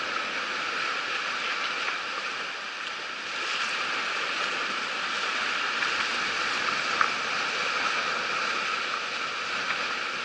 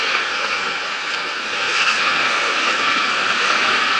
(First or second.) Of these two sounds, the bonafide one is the first